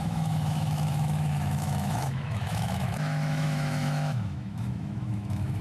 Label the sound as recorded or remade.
remade